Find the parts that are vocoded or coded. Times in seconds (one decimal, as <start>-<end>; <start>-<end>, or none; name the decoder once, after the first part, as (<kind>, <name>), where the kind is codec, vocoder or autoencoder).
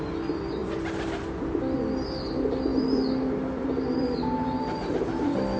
none